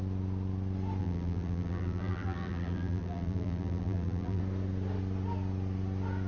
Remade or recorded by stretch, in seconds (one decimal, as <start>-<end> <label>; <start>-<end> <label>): 0.0-1.0 recorded; 1.0-4.4 remade; 4.4-6.3 recorded